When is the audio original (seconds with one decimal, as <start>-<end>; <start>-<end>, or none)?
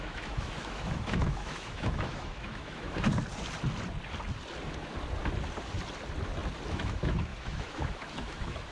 3.1-6.7